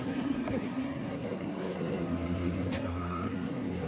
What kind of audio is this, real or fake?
fake